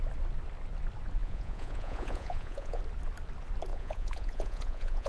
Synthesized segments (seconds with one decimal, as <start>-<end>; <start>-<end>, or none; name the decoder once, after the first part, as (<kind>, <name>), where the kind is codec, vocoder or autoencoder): 1.2-2.8 (vocoder, Vocos); 3.7-5.1